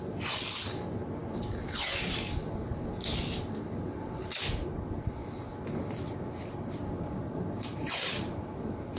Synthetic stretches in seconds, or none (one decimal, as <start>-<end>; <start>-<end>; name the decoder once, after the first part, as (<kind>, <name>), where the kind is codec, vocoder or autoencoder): none

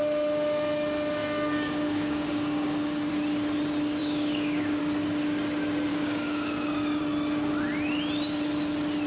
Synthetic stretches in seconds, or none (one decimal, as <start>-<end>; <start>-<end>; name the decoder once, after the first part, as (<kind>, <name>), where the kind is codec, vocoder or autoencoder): 1.2-3.1 (codec, DAC); 4.0-4.8; 5.9-7.0

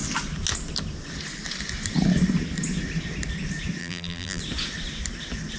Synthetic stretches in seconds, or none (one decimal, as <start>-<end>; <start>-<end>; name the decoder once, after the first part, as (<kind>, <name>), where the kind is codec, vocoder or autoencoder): 3.8-4.4 (vocoder, BigVGAN v2)

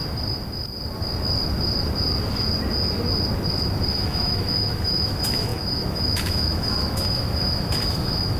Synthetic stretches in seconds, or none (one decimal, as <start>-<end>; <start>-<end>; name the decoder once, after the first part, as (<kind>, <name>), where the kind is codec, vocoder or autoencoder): 3.9-8.4 (autoencoder, DAC-VAE)